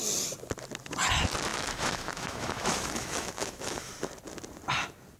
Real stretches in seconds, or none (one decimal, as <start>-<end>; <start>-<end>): 0.0-1.5; 3.9-5.2